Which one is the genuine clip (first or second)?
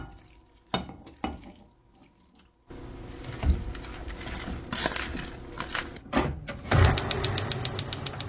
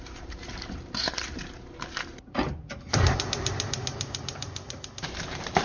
first